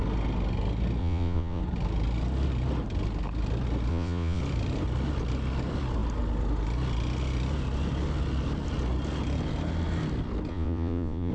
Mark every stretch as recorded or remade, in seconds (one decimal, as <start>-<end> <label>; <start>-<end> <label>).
0.0-1.0 recorded; 1.0-1.6 remade; 1.6-3.9 recorded; 3.9-4.4 remade; 4.4-10.5 recorded; 10.5-11.3 remade